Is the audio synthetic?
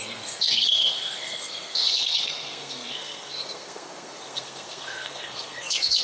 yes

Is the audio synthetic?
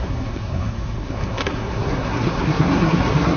yes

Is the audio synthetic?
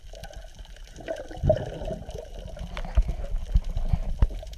no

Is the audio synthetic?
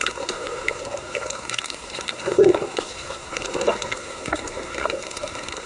yes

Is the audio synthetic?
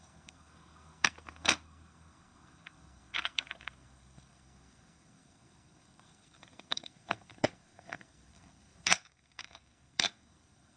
yes